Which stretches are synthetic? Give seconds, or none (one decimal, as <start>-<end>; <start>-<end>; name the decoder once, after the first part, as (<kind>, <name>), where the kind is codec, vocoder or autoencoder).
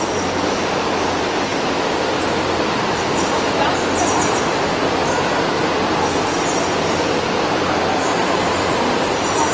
none